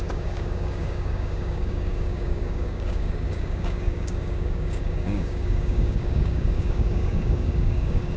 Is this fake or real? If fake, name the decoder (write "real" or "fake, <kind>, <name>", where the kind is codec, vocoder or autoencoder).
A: fake, codec, DAC